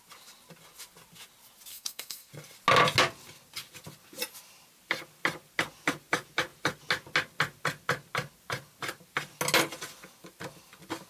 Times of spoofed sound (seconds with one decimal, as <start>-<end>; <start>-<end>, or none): 1.7-2.3